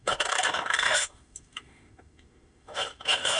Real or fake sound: fake